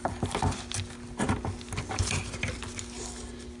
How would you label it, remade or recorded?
recorded